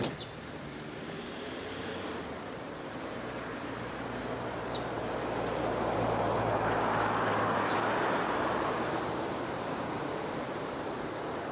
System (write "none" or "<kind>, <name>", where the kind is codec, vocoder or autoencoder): vocoder, BigVGAN v2